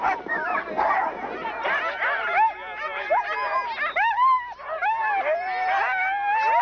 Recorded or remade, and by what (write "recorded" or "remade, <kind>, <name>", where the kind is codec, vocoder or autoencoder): recorded